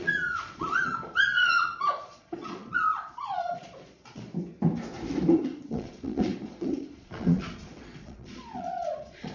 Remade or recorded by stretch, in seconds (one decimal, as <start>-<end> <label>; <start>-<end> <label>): 0.0-4.3 remade; 4.3-5.3 recorded; 5.3-9.3 remade